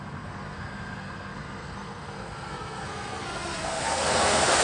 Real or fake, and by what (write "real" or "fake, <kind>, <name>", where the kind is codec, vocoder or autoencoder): fake, codec, SNAC